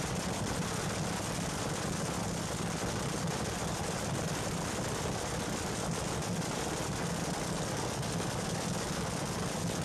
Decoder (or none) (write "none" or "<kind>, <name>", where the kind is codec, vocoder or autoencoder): none